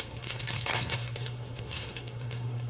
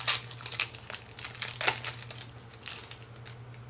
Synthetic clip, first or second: first